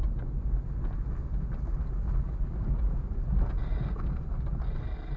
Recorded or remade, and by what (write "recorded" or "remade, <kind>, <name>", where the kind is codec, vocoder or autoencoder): recorded